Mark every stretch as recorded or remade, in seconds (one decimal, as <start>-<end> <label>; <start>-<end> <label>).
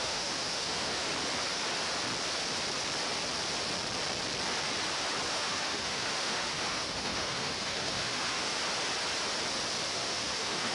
0.0-1.1 remade; 1.1-5.3 recorded; 5.3-8.6 remade; 8.6-9.9 recorded; 9.9-10.7 remade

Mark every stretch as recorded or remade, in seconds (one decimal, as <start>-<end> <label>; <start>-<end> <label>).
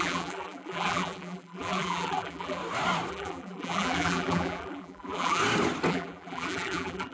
0.0-2.6 remade; 2.6-3.1 recorded; 3.1-5.4 remade; 5.4-5.9 recorded; 5.9-7.1 remade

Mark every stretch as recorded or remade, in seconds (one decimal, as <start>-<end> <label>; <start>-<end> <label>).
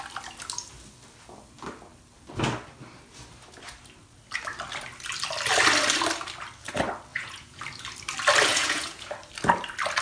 0.0-7.1 recorded; 7.1-7.6 remade; 7.6-8.5 recorded; 8.5-9.1 remade; 9.1-10.0 recorded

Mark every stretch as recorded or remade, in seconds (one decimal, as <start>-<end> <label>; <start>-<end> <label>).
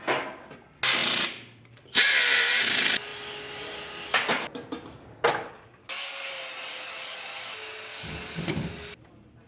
0.0-5.8 recorded; 5.8-6.3 remade; 6.3-7.9 recorded; 7.9-8.7 remade; 8.7-9.5 recorded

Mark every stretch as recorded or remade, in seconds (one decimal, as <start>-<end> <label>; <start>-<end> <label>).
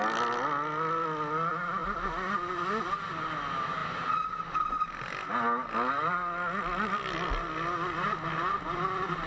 0.0-3.8 recorded; 3.8-4.9 remade; 4.9-9.3 recorded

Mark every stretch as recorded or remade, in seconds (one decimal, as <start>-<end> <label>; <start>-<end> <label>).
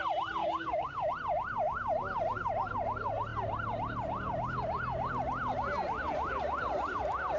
0.0-0.4 recorded; 0.4-1.1 remade; 1.1-7.4 recorded